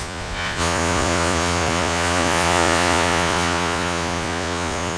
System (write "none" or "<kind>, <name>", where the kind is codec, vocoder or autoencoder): vocoder, Vocos